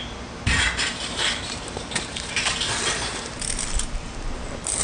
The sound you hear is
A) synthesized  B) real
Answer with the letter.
A